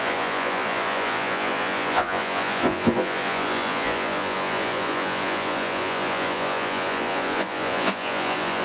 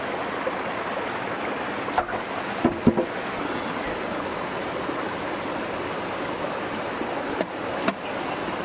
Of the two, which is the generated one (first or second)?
first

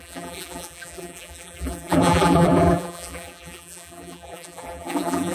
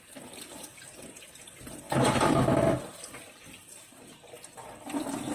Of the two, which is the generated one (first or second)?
first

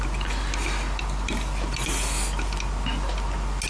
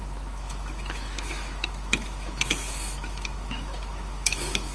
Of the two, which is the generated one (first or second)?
second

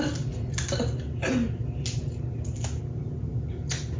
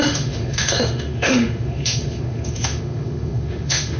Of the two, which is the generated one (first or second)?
second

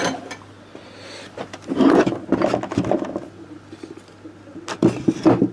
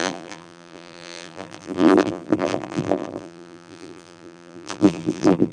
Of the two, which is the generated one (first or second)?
second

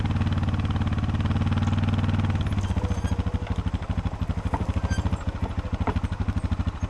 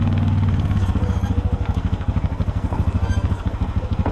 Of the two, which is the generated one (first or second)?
second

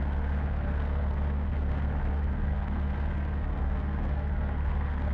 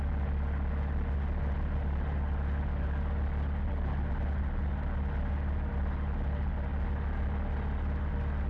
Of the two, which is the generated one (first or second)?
first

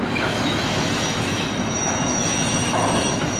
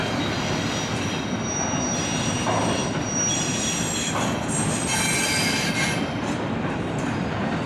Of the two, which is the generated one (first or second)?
first